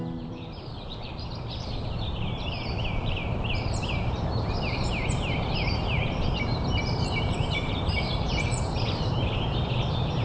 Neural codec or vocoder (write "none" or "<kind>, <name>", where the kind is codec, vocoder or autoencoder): vocoder, BigVGAN v2